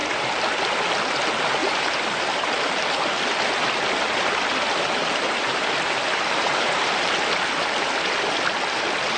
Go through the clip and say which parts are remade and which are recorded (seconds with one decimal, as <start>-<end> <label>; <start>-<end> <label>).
0.0-1.6 recorded; 1.6-2.8 remade; 2.8-5.0 recorded; 5.0-7.2 remade; 7.2-9.2 recorded